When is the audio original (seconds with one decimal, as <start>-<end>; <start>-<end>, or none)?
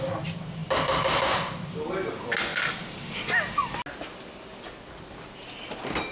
0.0-6.1